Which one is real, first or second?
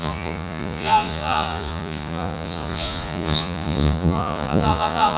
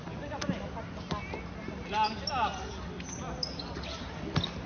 second